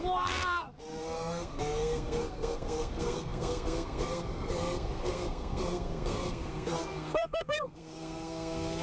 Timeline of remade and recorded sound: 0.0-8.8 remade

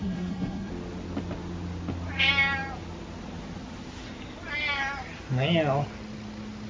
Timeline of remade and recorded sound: 0.0-0.7 remade; 0.7-6.7 recorded

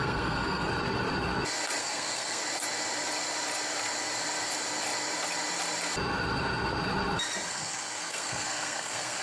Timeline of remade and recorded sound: 0.0-0.7 remade; 0.7-1.8 recorded; 1.8-2.4 remade; 2.4-7.5 recorded; 7.5-9.2 remade

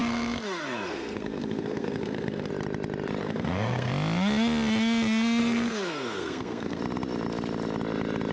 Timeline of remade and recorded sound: 0.0-2.5 remade; 2.5-3.2 recorded; 3.2-3.9 remade; 3.9-5.4 recorded; 5.4-6.8 remade; 6.8-8.3 recorded

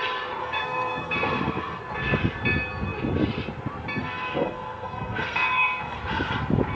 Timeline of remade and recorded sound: 0.0-0.4 recorded; 0.4-1.8 remade; 1.8-4.0 recorded; 4.0-6.0 remade; 6.0-6.7 recorded

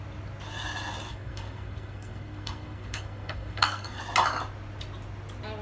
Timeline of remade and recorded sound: 0.0-1.1 recorded; 1.1-4.0 remade; 4.0-5.6 recorded

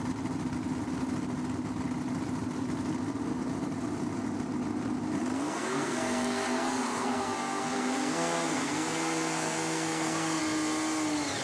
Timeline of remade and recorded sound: 0.0-5.3 recorded; 5.3-10.4 remade; 10.4-11.4 recorded